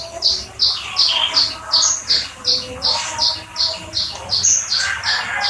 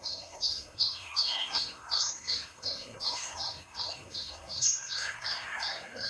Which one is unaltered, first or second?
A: first